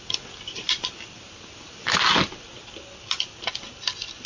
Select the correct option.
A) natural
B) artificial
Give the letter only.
A